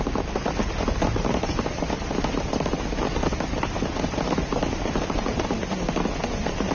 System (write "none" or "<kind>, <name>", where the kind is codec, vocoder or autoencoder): none